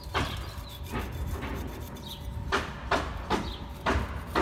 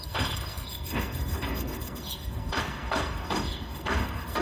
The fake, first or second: second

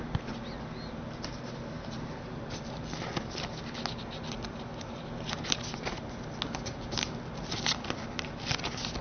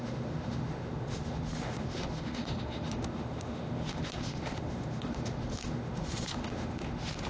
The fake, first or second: second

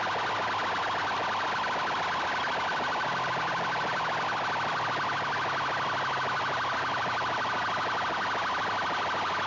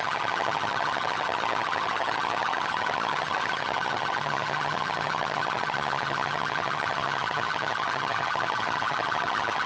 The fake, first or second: second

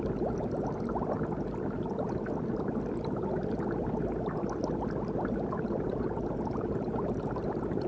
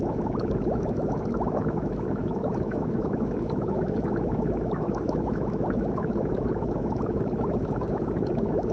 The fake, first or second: second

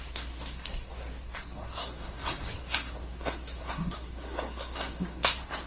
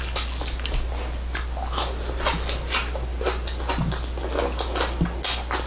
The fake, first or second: first